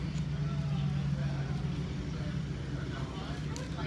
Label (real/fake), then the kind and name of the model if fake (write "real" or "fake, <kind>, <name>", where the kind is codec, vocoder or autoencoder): real